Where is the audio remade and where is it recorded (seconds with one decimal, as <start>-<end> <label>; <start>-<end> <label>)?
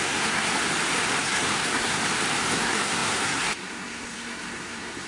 0.0-0.5 remade; 0.5-1.2 recorded; 1.2-2.0 remade; 2.0-2.5 recorded; 2.5-5.1 remade